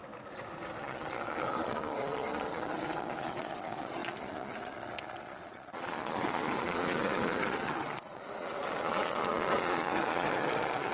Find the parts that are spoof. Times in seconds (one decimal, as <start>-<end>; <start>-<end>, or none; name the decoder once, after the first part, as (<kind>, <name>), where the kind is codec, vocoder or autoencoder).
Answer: 0.8-10.9 (vocoder, Vocos)